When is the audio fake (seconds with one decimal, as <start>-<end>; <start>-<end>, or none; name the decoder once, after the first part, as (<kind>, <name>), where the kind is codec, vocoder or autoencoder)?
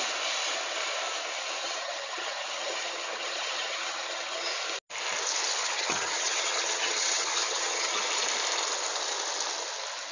1.6-4.5 (vocoder, HiFi-GAN); 5.6-8.0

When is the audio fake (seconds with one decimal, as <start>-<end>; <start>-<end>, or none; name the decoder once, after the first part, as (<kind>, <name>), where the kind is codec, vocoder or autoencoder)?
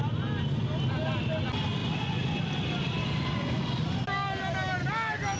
none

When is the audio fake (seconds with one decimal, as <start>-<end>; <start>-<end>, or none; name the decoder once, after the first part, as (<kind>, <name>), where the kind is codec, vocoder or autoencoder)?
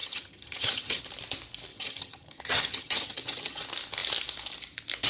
0.0-1.0 (vocoder, HiFi-GAN); 1.7-3.6